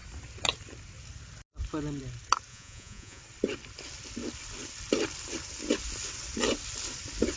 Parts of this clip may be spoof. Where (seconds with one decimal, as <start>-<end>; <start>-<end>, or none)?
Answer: 2.5-3.2